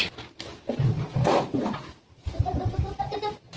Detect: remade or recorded recorded